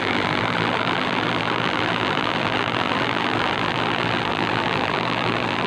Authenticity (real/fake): fake